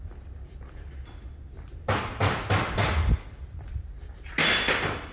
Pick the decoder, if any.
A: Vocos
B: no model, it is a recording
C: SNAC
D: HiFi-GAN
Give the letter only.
B